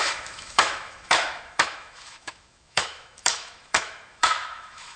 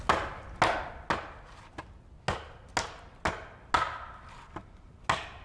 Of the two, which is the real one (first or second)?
second